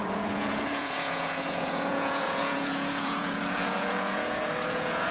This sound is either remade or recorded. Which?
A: remade